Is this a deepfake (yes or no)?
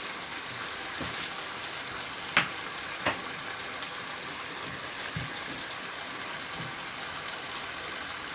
no